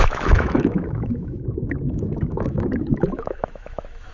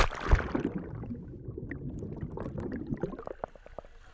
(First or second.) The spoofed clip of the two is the first